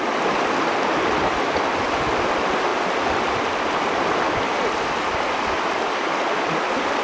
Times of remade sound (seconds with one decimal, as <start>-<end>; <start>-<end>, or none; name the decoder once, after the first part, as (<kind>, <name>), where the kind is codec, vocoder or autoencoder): none